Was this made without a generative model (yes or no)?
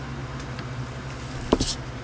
yes